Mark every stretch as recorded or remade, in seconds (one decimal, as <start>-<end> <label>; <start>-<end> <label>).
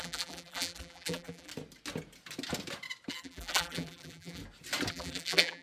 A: 0.0-1.5 remade; 1.5-3.1 recorded; 3.1-4.4 remade; 4.4-4.9 recorded; 4.9-5.6 remade